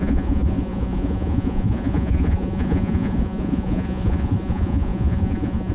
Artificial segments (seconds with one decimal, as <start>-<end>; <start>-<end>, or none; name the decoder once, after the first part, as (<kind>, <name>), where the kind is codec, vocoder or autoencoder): 0.0-5.7 (vocoder, Vocos)